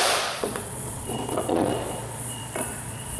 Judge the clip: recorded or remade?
remade